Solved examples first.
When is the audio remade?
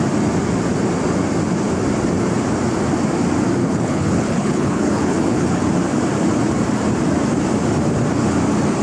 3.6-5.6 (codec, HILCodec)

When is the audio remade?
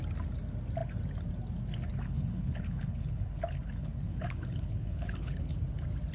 1.9-5.6 (codec, HILCodec)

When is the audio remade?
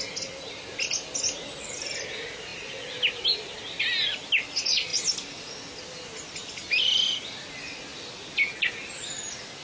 none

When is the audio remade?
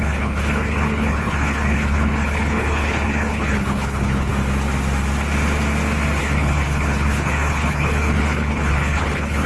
0.0-4.3 (codec, HILCodec); 6.2-9.5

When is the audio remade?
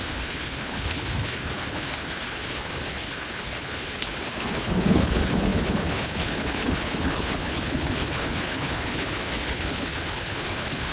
0.0-10.9 (codec, HILCodec)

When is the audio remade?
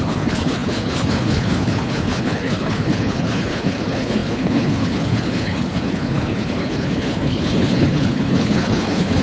0.0-9.2 (codec, HILCodec)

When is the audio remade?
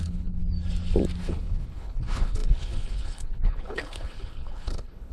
0.0-0.4 (codec, HILCodec); 1.2-5.1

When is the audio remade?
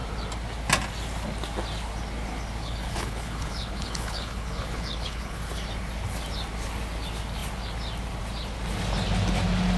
2.6-5.4 (codec, HILCodec)